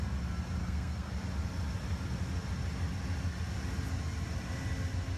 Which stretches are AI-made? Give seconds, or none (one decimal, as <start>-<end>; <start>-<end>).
0.6-1.1